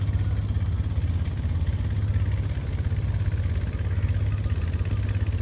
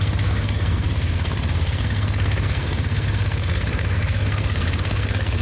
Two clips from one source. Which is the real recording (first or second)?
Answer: first